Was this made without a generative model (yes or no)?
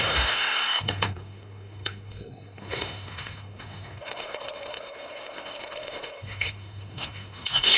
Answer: no